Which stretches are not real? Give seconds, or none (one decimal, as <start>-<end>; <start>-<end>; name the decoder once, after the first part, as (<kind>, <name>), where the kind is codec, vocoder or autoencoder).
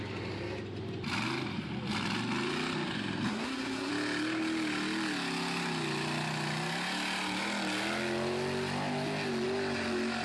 3.3-3.9 (codec, SNAC)